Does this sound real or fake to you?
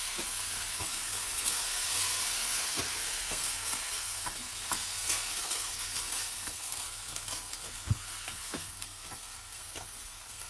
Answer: fake